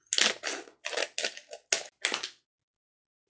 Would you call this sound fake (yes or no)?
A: no